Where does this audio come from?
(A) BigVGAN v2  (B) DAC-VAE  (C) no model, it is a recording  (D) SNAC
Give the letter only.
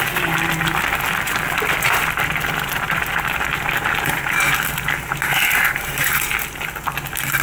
C